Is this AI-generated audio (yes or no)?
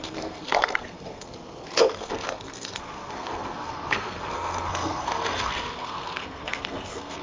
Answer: yes